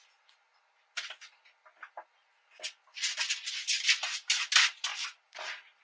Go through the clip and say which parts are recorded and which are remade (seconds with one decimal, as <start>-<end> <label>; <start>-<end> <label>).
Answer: 0.0-4.9 recorded; 4.9-5.8 remade